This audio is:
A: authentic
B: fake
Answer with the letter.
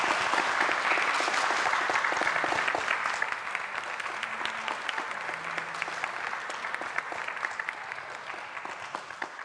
A